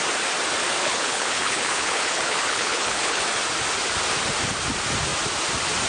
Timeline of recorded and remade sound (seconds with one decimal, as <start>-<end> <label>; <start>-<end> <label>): 0.0-0.8 recorded; 0.8-3.2 remade; 3.2-5.9 recorded